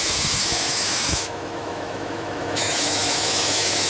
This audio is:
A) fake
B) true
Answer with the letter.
A